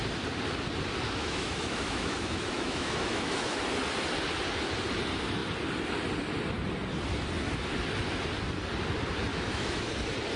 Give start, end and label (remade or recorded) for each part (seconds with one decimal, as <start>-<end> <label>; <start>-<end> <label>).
0.0-1.2 recorded; 1.2-3.6 remade; 3.6-9.3 recorded; 9.3-9.9 remade; 9.9-10.4 recorded